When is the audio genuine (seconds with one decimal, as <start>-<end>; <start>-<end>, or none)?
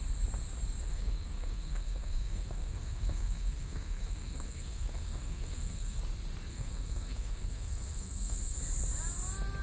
0.0-0.8; 6.0-6.5; 8.6-9.6